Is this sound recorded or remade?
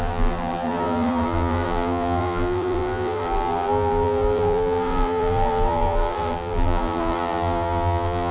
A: remade